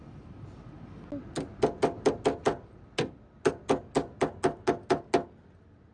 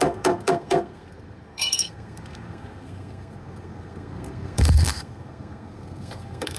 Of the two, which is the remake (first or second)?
second